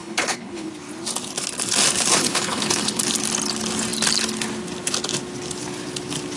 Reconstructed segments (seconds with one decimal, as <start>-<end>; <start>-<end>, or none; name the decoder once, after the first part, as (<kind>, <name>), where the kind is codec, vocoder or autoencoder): 0.0-0.7 (codec, HILCodec); 2.1-3.0